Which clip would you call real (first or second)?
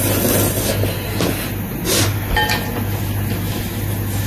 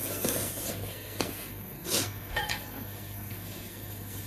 first